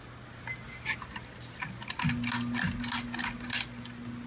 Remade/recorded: recorded